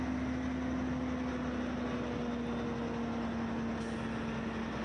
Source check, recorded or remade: recorded